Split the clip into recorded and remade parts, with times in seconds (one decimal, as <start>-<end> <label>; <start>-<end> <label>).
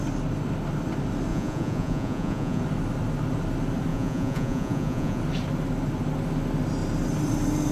0.0-1.3 recorded; 1.3-2.6 remade; 2.6-3.9 recorded; 3.9-5.2 remade; 5.2-7.7 recorded